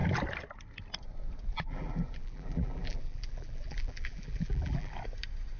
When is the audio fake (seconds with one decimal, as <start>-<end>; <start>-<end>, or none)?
1.5-4.9